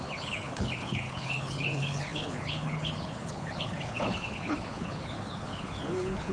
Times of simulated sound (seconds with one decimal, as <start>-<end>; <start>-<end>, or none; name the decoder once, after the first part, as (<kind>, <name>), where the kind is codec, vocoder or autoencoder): 0.0-6.3 (codec, HILCodec)